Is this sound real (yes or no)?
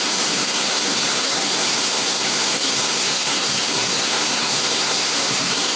no